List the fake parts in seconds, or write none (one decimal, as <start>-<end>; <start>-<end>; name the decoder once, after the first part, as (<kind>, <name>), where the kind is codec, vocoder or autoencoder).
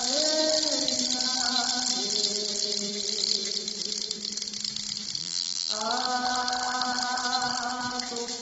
5.2-5.8 (vocoder, BigVGAN v2)